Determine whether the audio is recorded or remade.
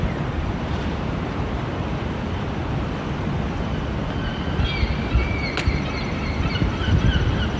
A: recorded